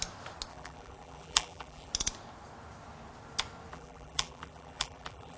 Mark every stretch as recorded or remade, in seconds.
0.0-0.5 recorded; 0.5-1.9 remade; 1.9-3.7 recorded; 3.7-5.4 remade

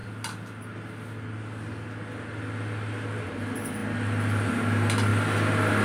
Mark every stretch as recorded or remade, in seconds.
0.0-5.8 recorded

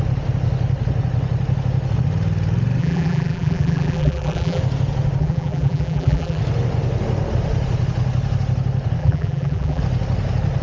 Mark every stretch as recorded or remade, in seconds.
0.0-2.8 recorded; 2.8-4.6 remade; 4.6-5.2 recorded; 5.2-6.4 remade; 6.4-9.0 recorded; 9.0-9.8 remade; 9.8-10.6 recorded

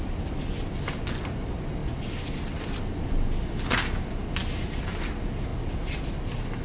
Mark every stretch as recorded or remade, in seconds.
0.0-6.6 recorded